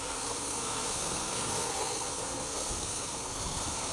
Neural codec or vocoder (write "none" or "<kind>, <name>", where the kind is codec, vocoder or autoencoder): codec, SNAC